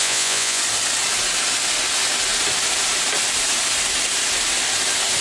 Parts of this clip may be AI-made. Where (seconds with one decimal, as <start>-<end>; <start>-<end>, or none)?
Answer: 0.0-0.6